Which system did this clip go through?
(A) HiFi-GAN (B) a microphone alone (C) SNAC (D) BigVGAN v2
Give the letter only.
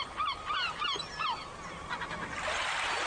B